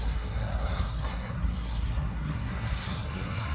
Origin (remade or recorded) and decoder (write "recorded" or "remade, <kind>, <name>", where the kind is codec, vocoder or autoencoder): remade, codec, SNAC